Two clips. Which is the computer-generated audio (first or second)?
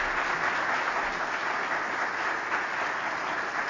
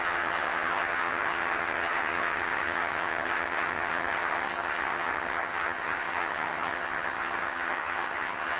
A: second